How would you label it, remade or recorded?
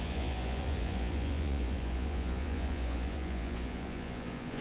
remade